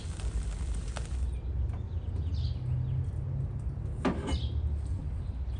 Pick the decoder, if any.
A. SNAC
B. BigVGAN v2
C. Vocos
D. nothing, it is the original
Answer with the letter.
D